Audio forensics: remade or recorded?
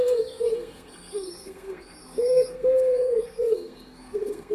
remade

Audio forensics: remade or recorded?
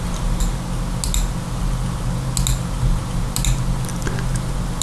recorded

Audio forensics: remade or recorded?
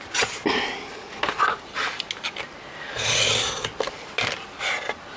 recorded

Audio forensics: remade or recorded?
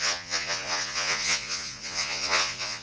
remade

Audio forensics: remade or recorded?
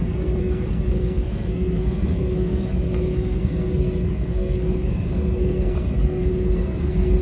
remade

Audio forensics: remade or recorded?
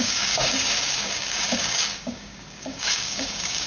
remade